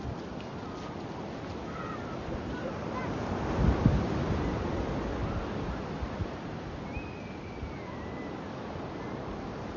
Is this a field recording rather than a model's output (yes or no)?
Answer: yes